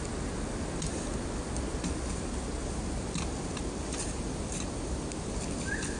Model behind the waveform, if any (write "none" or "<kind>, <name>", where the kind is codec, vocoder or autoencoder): none